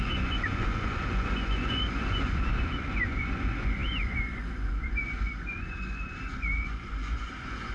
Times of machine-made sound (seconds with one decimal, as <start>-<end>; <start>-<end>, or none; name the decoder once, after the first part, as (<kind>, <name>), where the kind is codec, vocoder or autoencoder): 0.0-7.7 (vocoder, Vocos)